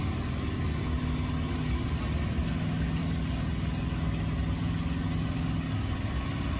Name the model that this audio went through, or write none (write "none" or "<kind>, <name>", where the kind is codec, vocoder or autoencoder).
none